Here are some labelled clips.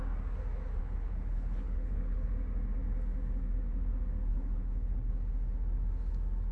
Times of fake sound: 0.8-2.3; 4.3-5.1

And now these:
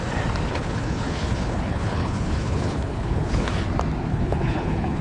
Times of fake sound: 0.5-3.5; 4.1-5.0

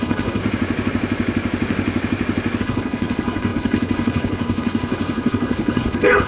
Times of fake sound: 0.0-0.4; 2.6-6.3